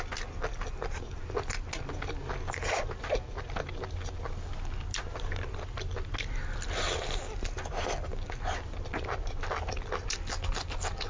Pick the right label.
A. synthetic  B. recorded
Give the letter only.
B